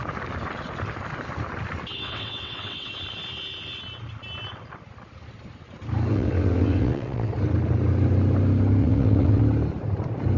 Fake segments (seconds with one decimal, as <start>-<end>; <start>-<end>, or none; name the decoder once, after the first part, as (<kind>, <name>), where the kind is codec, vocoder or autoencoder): 1.9-2.9 (vocoder, WaveNeXt); 6.1-7.3; 8.8-9.4